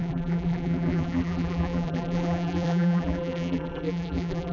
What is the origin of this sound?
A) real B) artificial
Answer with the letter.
B